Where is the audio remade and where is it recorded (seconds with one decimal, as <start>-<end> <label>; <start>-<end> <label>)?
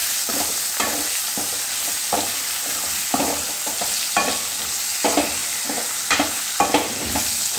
0.0-3.6 remade; 3.6-7.6 recorded